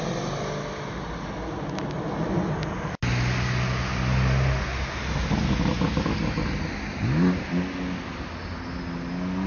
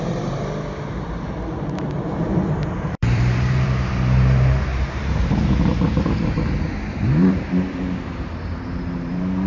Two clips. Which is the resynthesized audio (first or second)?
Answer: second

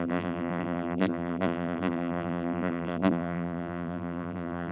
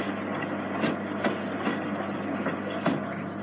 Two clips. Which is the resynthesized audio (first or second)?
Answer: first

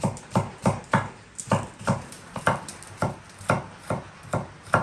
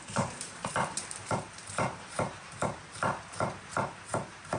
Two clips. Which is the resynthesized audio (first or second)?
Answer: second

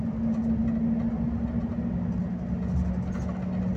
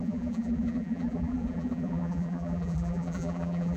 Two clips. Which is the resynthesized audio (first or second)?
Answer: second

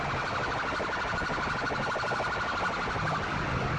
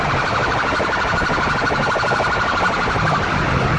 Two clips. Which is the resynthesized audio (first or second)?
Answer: second